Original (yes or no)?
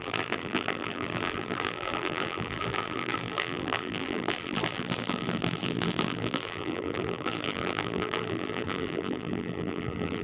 no